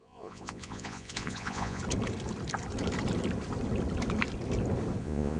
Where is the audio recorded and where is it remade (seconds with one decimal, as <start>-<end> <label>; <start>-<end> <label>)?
0.0-1.8 remade; 1.8-5.0 recorded; 5.0-5.4 remade